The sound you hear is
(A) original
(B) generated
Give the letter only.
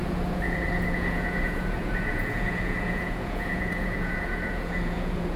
B